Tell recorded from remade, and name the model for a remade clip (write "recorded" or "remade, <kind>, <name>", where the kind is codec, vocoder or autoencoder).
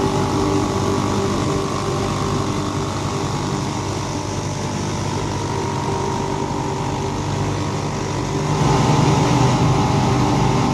recorded